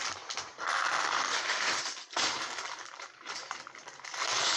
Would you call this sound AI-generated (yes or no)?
yes